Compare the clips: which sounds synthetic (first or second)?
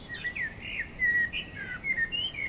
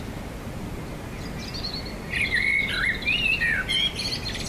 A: first